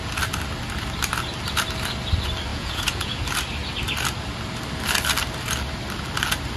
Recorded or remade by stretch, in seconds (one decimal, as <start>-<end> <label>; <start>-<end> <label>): 0.0-2.5 recorded; 2.5-3.2 remade; 3.2-6.6 recorded